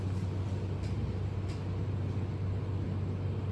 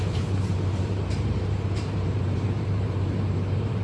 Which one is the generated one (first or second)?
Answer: second